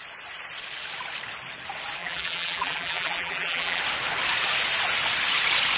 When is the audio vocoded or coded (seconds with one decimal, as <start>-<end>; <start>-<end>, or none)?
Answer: 2.0-3.8